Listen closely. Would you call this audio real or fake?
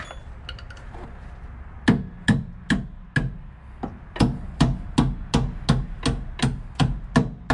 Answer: real